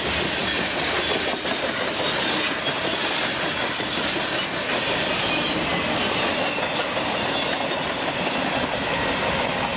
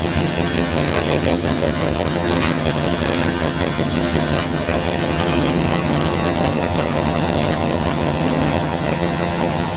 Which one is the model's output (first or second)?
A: second